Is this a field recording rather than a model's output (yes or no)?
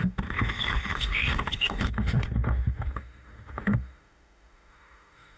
no